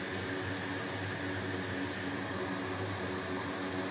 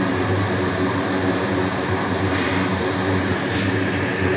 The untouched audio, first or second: first